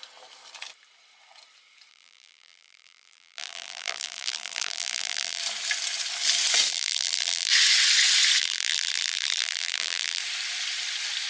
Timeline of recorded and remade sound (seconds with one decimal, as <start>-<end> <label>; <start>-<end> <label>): 0.0-1.9 recorded; 1.9-5.4 remade; 5.4-6.7 recorded; 6.7-7.5 remade; 7.5-8.4 recorded; 8.4-10.2 remade; 10.2-11.3 recorded